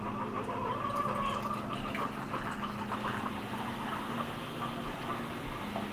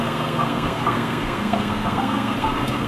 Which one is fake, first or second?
second